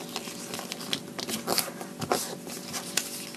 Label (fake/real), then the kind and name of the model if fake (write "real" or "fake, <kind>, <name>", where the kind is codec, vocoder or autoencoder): real